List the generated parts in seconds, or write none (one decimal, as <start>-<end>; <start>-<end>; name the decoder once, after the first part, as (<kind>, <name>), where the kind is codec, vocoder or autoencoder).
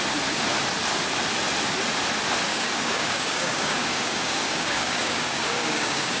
2.5-6.2 (codec, DAC)